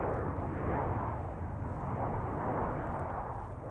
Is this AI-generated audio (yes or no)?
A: no